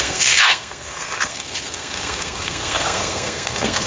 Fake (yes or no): yes